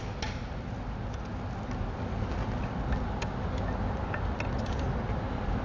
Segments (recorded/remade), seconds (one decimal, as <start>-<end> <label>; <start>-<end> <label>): 0.0-5.6 recorded